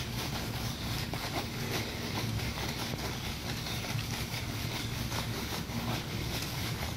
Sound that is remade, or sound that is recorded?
remade